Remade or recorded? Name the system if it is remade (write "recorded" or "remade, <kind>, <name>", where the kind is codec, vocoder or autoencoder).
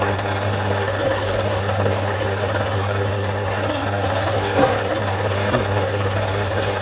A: remade, codec, SNAC